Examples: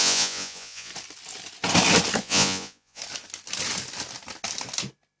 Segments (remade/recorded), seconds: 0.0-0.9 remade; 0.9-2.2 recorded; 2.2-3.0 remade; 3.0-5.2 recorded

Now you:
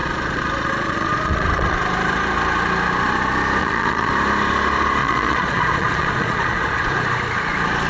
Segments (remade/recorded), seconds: 0.0-1.8 remade; 1.8-3.6 recorded; 3.6-4.1 remade; 4.1-5.0 recorded; 5.0-6.9 remade; 6.9-7.9 recorded

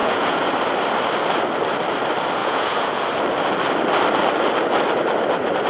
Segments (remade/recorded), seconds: 0.0-0.5 remade; 0.5-2.4 recorded; 2.4-3.0 remade; 3.0-5.7 recorded